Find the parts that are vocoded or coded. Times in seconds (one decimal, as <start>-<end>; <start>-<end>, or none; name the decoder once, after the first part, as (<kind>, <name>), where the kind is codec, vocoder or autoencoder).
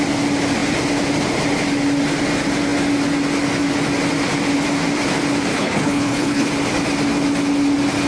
5.5-6.5 (codec, HILCodec)